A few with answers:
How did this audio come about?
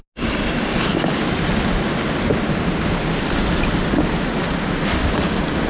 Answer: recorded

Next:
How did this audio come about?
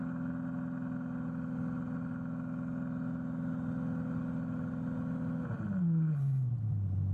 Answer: recorded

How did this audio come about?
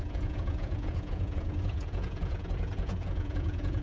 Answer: remade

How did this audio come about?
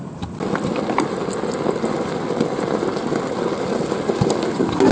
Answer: recorded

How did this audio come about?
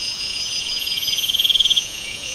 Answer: remade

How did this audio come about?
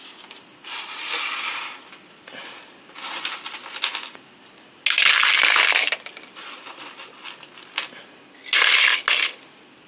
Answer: recorded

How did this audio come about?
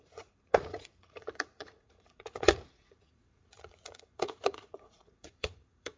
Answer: remade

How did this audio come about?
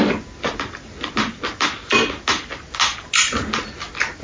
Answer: recorded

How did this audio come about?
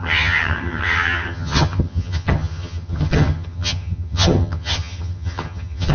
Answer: remade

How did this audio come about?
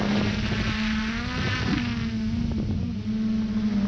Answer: recorded